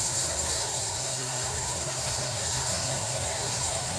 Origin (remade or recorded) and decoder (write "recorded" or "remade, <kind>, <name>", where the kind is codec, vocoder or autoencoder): remade, codec, SNAC